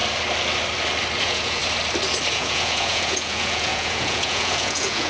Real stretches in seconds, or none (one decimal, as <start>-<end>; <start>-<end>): 0.0-1.2; 1.6-2.3